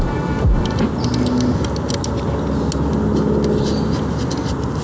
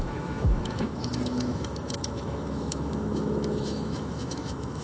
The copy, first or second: second